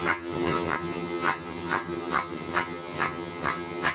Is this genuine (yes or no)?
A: no